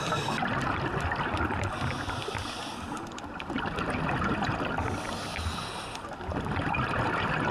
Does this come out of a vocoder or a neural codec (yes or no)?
no